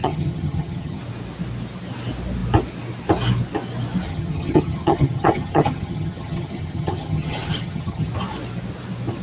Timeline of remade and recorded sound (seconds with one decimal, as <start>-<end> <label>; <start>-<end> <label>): 0.0-1.0 remade; 1.0-4.1 recorded; 4.1-8.1 remade; 8.1-9.2 recorded